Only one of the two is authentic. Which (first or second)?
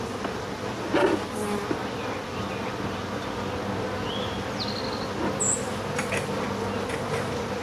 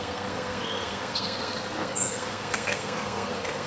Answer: first